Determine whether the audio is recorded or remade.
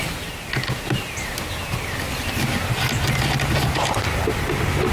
recorded